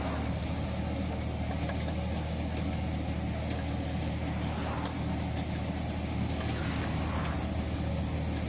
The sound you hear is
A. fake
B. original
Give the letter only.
B